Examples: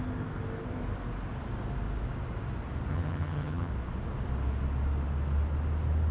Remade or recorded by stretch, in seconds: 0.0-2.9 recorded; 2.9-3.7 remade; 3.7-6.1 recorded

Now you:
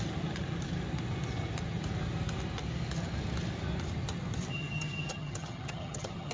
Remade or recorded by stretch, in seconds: 0.0-4.5 recorded; 4.5-6.3 remade

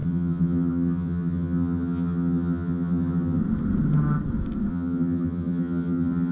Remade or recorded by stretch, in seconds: 0.0-3.4 remade; 3.4-4.7 recorded; 4.7-6.3 remade

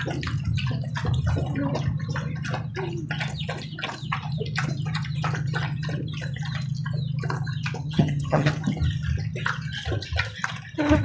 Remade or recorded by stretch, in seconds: 0.0-7.8 recorded; 7.8-8.5 remade; 8.5-11.0 recorded